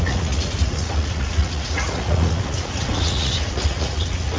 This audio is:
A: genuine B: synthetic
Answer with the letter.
B